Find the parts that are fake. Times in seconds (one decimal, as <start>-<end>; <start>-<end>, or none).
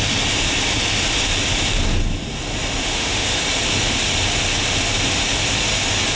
2.8-3.4